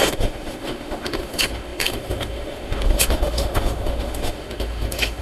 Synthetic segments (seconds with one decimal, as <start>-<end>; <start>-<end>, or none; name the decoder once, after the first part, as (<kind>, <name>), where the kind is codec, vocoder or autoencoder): 0.0-5.2 (autoencoder, DAC-VAE)